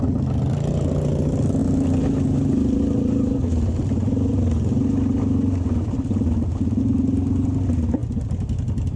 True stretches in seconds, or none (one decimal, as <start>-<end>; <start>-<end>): 0.0-9.0